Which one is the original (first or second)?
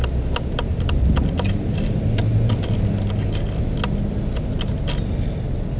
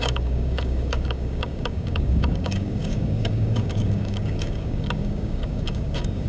first